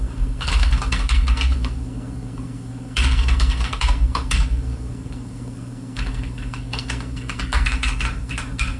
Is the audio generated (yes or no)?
yes